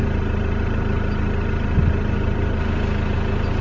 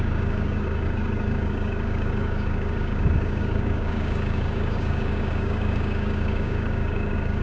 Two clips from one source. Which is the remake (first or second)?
second